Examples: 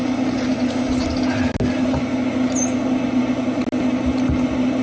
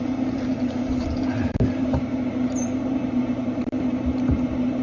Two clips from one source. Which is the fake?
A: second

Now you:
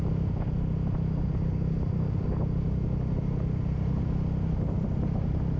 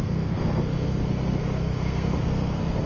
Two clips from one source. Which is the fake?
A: second